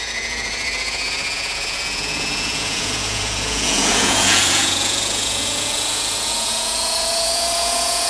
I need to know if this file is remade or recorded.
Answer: remade